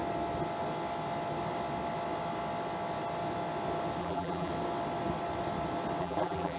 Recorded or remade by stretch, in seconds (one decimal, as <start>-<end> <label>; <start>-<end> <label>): 0.0-4.0 recorded; 4.0-4.5 remade; 4.5-6.0 recorded; 6.0-6.6 remade